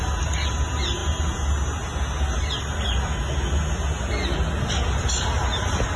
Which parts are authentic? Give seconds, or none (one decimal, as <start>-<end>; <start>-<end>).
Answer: 0.0-6.0